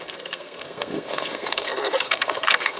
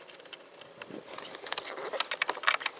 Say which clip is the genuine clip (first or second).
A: second